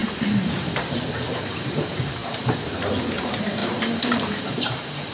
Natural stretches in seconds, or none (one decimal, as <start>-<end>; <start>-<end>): none